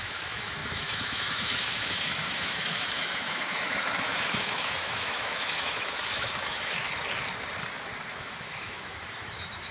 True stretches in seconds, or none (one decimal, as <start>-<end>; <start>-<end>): 6.8-8.1